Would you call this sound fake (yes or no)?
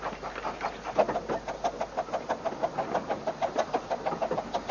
no